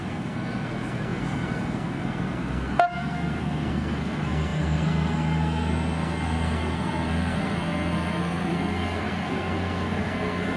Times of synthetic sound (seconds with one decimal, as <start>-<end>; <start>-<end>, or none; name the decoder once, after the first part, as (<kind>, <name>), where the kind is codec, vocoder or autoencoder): 0.0-10.6 (codec, SNAC)